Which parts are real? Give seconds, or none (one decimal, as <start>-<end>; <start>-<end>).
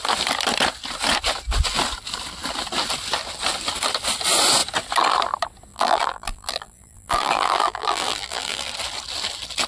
0.0-5.7; 8.7-9.7